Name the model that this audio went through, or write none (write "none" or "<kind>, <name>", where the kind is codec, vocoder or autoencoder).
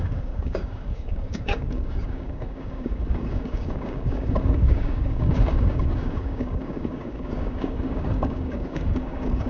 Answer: codec, DAC